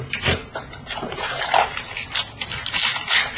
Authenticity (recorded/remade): remade